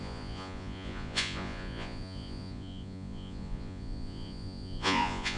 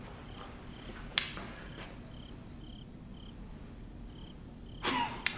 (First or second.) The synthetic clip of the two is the first